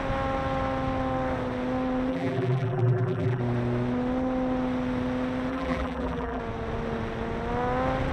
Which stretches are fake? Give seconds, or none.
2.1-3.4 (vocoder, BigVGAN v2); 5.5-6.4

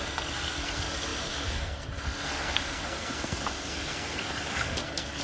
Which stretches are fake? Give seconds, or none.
0.0-5.2 (codec, SNAC)

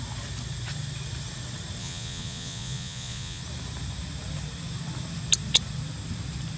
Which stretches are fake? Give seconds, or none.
1.8-3.4 (vocoder, Vocos)

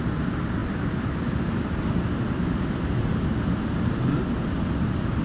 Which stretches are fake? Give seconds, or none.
none

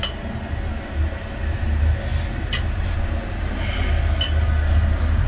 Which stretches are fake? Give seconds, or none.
none

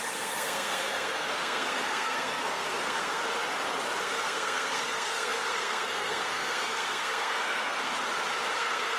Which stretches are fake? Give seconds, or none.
0.0-3.2 (codec, SNAC); 4.0-7.9; 8.5-9.0